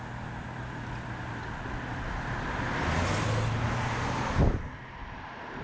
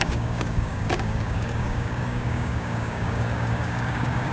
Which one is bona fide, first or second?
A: first